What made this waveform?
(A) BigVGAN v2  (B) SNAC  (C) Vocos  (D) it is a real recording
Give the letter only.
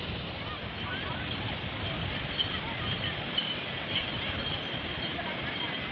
D